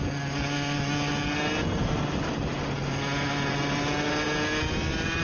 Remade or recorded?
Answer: recorded